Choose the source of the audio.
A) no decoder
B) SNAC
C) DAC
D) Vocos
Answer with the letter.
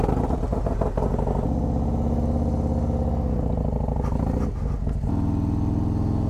A